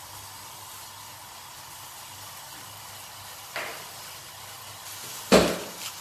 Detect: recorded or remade recorded